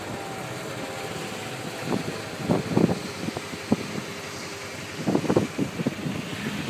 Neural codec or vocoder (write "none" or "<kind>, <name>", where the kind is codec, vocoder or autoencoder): none